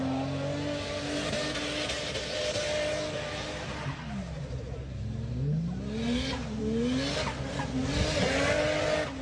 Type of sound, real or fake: real